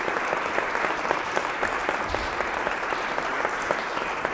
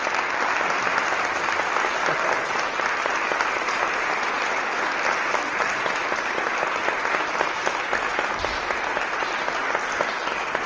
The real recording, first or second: second